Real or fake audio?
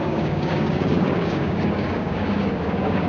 fake